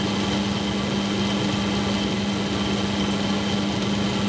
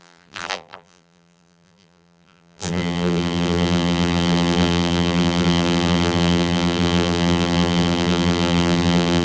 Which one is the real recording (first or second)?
first